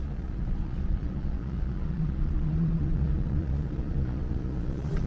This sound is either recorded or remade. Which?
remade